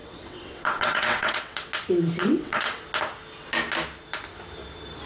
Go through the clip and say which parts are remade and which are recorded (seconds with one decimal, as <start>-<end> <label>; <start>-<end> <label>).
0.0-1.7 remade; 1.7-2.2 recorded; 2.2-2.8 remade; 2.8-5.1 recorded